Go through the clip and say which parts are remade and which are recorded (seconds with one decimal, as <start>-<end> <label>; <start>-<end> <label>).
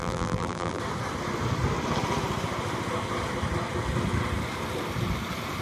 0.0-0.8 remade; 0.8-5.6 recorded